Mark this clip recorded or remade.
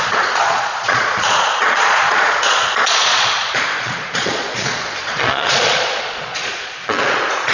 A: remade